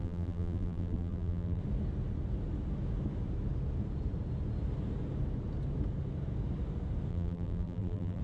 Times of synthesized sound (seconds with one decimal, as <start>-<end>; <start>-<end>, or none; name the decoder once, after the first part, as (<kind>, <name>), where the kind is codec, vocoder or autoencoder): 0.0-1.6 (vocoder, BigVGAN v2); 7.1-8.2